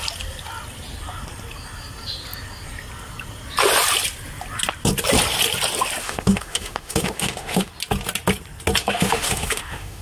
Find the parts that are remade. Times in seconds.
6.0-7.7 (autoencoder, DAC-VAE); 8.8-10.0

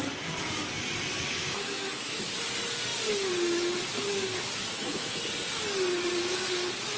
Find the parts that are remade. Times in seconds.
1.4-2.3 (autoencoder, DAC-VAE); 4.6-5.2

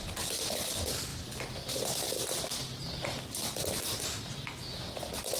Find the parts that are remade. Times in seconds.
none

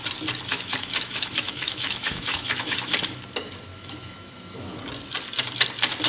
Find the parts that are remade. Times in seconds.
0.5-2.9 (autoencoder, DAC-VAE); 3.7-4.8

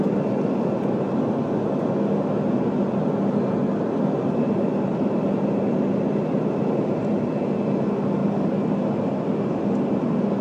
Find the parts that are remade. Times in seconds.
none